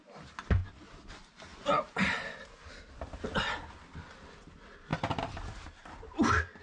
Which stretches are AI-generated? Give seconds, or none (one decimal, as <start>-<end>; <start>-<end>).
1.5-2.5